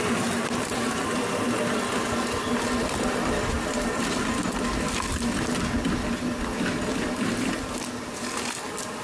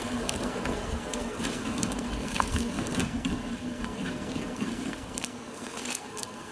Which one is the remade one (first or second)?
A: second